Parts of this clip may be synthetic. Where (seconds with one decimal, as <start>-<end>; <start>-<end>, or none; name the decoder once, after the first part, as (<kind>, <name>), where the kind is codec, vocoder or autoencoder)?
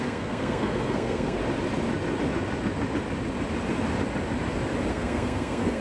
0.0-1.4 (codec, SNAC); 4.9-5.8